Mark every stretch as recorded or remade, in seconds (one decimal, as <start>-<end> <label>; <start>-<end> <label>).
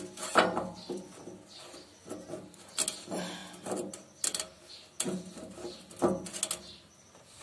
0.0-7.4 recorded